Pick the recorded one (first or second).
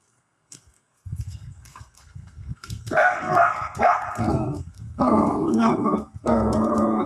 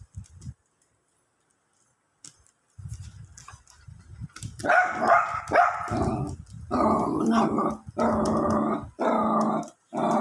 second